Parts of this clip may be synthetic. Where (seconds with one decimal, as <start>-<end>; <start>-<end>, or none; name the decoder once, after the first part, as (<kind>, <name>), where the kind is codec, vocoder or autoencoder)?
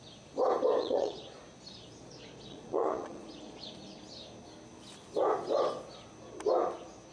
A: 0.8-1.4 (vocoder, Vocos); 2.0-3.7